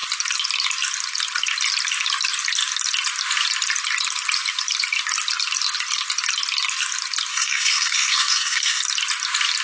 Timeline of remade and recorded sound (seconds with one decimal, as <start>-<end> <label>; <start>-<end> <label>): 0.0-7.3 recorded; 7.3-8.8 remade; 8.8-9.6 recorded